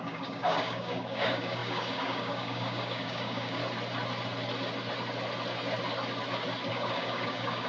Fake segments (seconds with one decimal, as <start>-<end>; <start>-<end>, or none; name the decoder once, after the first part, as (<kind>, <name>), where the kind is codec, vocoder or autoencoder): 0.0-3.6 (codec, DAC); 6.7-7.7